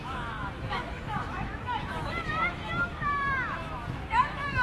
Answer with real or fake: fake